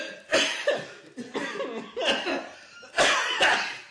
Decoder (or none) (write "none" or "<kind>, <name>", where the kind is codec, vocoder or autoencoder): none